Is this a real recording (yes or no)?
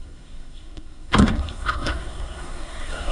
no